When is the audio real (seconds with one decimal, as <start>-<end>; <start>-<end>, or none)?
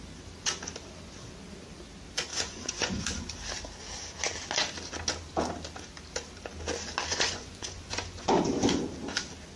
0.0-2.3; 3.0-7.1; 8.3-9.6